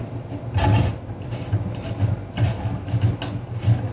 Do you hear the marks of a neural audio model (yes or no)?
no